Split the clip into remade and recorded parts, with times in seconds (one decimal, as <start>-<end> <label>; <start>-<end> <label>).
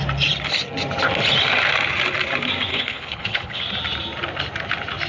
0.0-2.7 recorded; 2.7-3.6 remade; 3.6-5.1 recorded